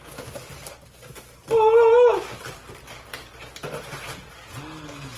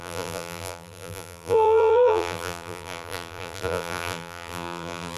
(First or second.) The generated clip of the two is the second